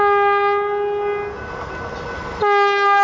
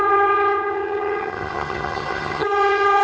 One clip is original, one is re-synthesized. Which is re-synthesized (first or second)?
second